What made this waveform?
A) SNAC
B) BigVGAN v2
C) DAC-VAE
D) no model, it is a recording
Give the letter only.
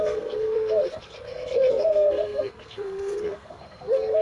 A